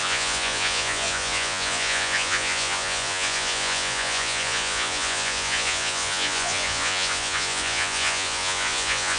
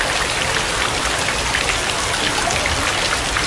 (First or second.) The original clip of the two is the second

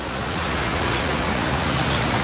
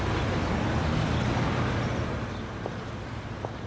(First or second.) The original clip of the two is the second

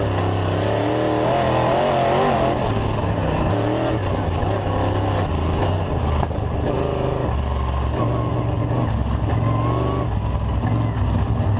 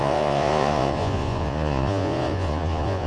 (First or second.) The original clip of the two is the first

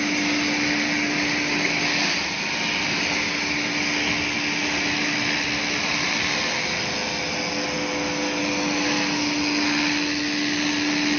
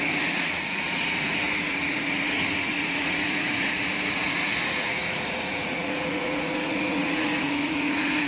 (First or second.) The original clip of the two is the first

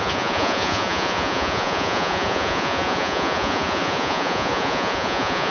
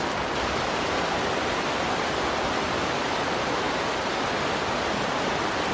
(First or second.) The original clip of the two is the second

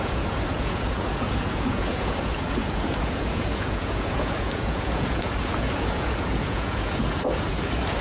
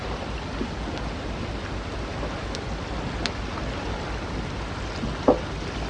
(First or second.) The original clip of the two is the second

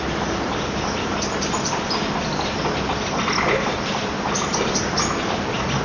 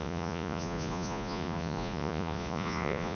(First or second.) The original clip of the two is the first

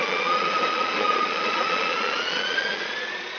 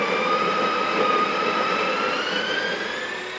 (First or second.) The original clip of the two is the second